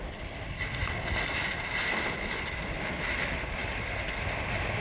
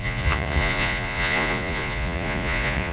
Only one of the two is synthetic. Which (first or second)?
second